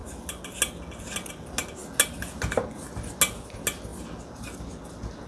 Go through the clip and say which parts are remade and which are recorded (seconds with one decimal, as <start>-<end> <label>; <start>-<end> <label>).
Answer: 0.0-5.3 recorded